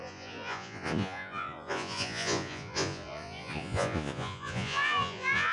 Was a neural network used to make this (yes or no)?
yes